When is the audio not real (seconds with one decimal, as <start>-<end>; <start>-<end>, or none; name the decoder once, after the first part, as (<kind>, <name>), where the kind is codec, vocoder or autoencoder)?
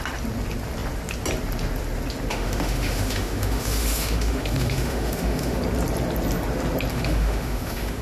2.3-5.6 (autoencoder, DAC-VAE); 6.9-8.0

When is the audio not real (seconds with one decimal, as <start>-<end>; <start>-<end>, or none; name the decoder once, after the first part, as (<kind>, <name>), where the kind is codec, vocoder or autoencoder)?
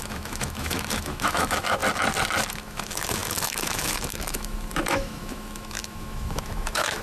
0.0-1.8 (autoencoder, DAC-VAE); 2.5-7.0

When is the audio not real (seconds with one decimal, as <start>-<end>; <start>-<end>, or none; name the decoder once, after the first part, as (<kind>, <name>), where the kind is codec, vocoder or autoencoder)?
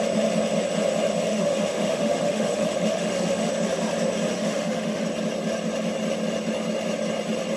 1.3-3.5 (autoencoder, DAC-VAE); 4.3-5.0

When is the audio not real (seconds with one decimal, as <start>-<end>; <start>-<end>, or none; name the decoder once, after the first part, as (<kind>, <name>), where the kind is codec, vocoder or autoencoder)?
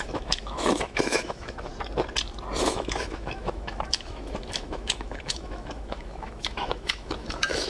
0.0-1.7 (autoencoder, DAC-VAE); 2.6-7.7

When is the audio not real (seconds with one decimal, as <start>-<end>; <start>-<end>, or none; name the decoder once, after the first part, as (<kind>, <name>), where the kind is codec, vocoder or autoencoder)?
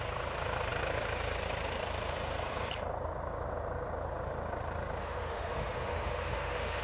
5.0-6.8 (autoencoder, DAC-VAE)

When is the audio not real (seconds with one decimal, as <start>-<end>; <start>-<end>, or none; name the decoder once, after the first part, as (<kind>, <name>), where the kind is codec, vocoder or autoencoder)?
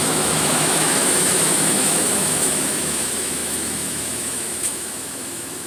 0.0-5.7 (autoencoder, DAC-VAE)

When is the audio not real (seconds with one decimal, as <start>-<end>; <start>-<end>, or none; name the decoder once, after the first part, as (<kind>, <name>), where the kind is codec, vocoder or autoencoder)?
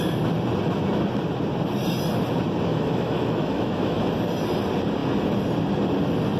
2.7-4.1 (autoencoder, DAC-VAE)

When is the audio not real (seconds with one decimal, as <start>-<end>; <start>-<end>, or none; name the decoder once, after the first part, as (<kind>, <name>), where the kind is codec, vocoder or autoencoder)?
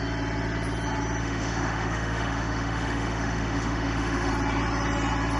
1.2-4.3 (autoencoder, DAC-VAE)